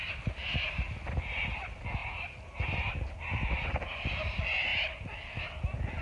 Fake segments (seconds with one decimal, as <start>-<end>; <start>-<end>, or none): none